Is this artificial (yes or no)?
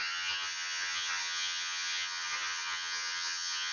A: yes